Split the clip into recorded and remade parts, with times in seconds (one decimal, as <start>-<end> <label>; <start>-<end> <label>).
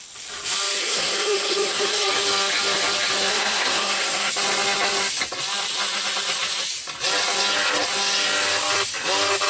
0.0-0.8 recorded; 0.8-2.1 remade; 2.1-3.3 recorded; 3.3-4.3 remade; 4.3-9.5 recorded